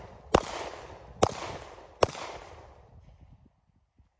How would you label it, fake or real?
real